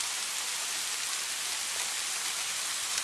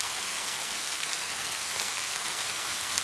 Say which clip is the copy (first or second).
second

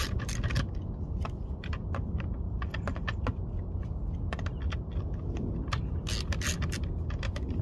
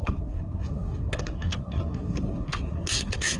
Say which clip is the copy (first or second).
second